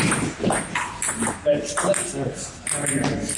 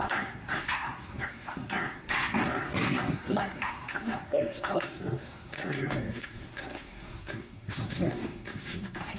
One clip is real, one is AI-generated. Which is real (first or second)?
first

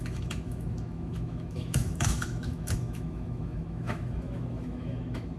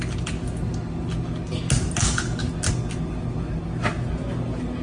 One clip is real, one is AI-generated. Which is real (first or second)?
second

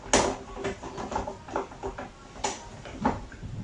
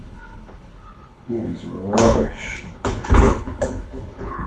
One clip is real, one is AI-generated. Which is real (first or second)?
first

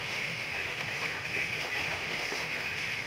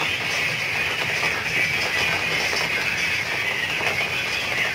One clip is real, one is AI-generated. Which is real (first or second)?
second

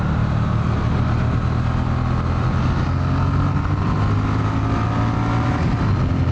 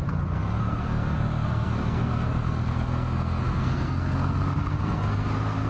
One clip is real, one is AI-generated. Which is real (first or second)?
first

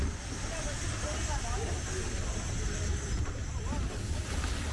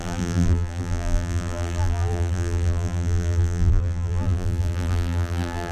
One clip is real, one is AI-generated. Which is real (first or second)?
first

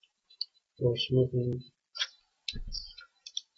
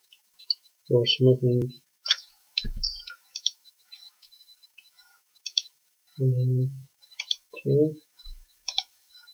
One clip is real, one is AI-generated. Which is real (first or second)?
first